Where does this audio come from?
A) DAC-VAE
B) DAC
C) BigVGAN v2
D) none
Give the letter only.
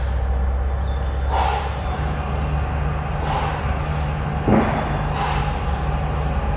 D